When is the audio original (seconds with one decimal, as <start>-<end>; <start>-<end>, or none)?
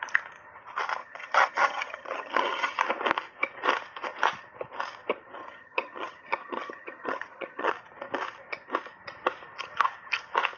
0.0-1.0; 2.8-5.4; 7.7-10.6